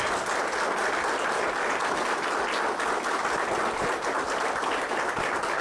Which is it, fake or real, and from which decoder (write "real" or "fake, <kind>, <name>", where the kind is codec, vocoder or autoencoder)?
real